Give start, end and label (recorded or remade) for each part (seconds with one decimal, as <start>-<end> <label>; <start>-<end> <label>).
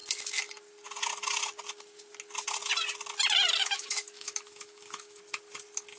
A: 0.0-3.6 recorded; 3.6-5.2 remade; 5.2-6.0 recorded